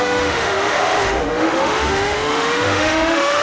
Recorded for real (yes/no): no